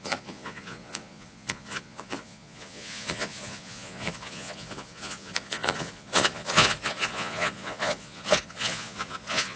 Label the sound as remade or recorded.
remade